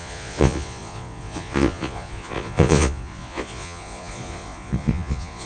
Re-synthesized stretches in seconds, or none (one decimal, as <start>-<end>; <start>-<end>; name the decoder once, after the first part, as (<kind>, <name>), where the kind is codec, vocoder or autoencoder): 0.0-5.5 (vocoder, Vocos)